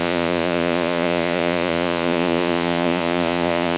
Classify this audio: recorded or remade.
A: remade